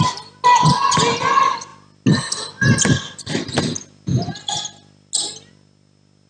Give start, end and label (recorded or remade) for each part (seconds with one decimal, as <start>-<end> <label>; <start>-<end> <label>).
0.0-6.3 recorded